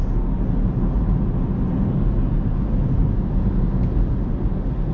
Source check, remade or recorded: recorded